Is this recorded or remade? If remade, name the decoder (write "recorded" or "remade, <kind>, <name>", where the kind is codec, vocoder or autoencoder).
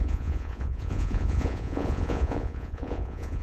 remade, vocoder, Vocos